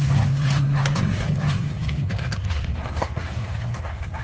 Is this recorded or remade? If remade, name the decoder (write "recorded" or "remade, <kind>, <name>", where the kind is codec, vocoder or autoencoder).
remade, codec, SNAC